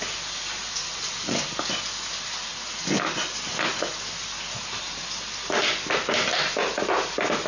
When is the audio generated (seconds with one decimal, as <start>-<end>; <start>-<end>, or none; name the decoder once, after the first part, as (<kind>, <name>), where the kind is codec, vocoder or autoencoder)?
none